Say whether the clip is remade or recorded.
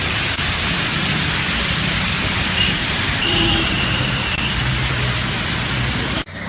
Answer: remade